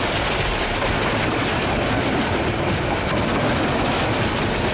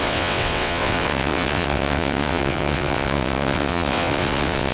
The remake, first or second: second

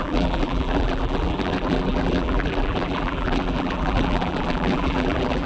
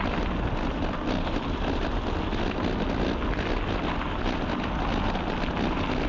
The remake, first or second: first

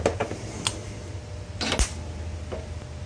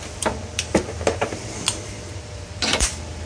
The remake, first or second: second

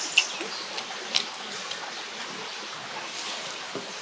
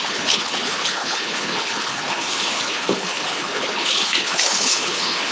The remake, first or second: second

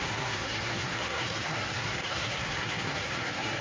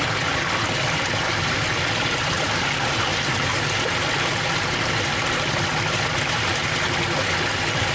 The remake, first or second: first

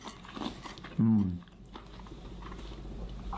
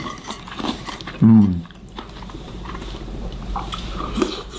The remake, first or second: second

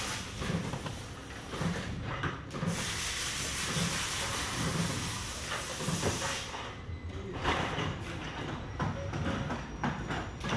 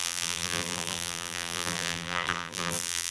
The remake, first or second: second